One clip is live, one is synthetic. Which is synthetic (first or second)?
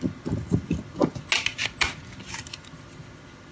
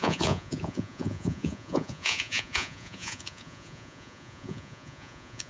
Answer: second